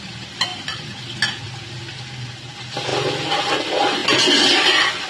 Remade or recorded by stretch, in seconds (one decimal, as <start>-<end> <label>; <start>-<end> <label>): 0.0-0.5 recorded; 0.5-1.1 remade; 1.1-5.1 recorded